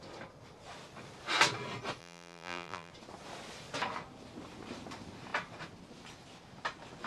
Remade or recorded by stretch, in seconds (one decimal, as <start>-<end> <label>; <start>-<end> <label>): 0.0-2.0 recorded; 2.0-2.9 remade; 2.9-7.1 recorded